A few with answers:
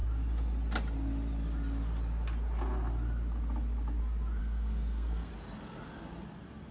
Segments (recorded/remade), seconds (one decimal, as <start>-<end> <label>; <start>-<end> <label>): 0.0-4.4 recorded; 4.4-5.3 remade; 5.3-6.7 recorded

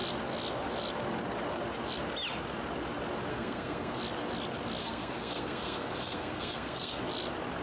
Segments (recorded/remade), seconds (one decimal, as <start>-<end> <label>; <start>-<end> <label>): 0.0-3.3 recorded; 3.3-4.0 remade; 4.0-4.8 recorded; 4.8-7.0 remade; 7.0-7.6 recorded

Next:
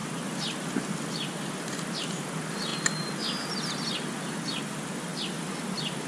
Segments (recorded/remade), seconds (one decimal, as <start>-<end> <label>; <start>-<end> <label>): 0.0-6.1 recorded